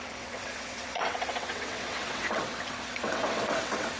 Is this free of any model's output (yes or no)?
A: no